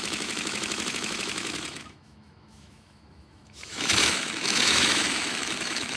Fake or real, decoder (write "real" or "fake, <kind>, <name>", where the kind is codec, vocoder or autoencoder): fake, autoencoder, DAC-VAE